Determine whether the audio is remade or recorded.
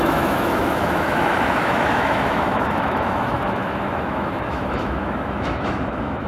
remade